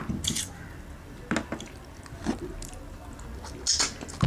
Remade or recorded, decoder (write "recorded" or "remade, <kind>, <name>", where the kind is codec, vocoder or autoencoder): recorded